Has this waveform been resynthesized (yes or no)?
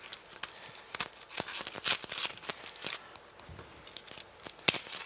no